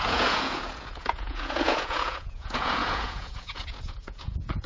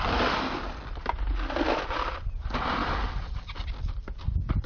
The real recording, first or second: second